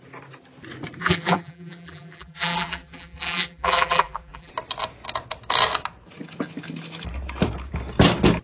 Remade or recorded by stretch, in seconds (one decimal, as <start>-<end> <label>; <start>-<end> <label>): 0.0-1.0 recorded; 1.0-4.5 remade; 4.5-8.4 recorded